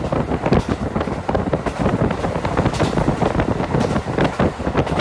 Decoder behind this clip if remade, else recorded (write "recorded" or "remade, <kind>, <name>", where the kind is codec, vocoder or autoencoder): recorded